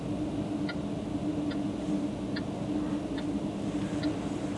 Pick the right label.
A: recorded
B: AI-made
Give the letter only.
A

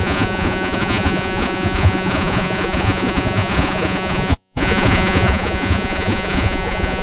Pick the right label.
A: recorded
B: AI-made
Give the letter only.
B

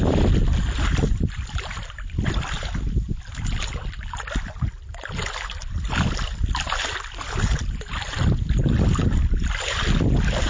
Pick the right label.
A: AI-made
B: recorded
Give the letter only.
B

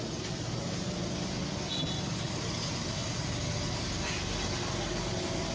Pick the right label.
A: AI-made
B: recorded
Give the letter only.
B